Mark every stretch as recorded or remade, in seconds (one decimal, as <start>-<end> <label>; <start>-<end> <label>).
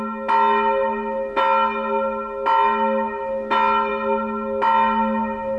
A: 0.0-5.6 recorded